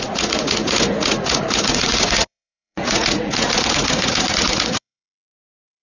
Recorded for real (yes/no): no